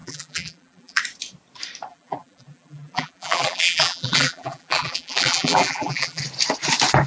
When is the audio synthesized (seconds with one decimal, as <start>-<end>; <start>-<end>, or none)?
0.0-1.0; 1.9-6.2